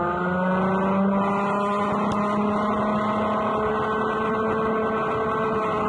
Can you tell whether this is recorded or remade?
recorded